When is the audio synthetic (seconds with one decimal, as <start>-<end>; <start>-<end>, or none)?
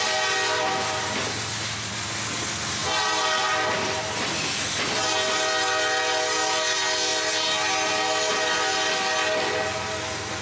none